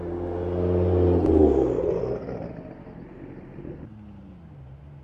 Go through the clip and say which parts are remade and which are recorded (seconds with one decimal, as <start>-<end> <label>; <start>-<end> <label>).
0.0-5.0 recorded